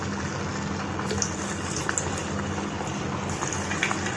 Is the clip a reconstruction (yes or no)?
no